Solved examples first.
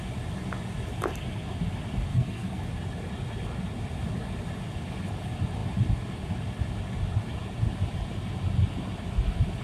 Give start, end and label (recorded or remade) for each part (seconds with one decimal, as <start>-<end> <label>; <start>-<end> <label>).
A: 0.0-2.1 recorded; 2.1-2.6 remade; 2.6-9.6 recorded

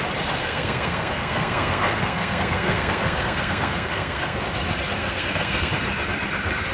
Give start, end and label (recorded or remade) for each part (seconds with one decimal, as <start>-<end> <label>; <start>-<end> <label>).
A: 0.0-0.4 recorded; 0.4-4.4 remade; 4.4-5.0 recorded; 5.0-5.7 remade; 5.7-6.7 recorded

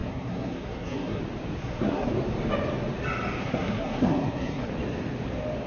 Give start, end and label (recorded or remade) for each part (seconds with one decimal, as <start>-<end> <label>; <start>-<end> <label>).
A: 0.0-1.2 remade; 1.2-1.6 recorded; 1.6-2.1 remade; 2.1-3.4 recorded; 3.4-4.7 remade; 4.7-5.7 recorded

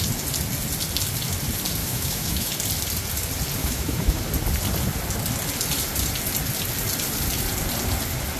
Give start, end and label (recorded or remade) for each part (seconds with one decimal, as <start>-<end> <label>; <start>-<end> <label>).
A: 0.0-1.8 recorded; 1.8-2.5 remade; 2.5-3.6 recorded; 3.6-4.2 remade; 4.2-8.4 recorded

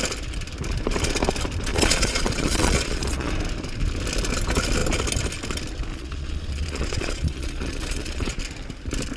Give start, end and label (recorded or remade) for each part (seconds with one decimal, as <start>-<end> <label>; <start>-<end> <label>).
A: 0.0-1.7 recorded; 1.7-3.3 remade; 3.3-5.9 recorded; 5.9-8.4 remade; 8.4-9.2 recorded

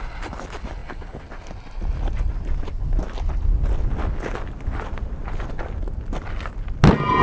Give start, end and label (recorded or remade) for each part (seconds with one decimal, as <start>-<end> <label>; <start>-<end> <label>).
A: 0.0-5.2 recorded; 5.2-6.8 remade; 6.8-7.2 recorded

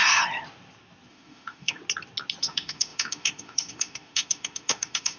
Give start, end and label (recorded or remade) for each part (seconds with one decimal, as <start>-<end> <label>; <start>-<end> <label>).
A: 0.0-1.1 recorded; 1.1-1.8 remade; 1.8-2.4 recorded; 2.4-5.2 remade